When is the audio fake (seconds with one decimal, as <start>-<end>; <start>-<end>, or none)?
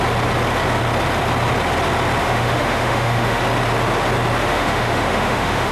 2.2-3.4; 4.4-5.7